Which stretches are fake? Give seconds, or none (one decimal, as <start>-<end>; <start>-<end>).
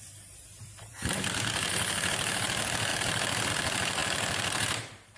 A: 2.9-3.5